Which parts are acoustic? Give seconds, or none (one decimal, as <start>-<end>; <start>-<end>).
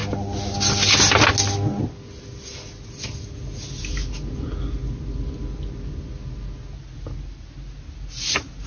0.0-8.7